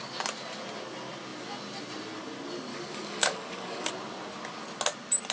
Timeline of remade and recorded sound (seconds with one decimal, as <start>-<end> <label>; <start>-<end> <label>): 0.0-2.7 recorded; 2.7-3.9 remade; 3.9-5.3 recorded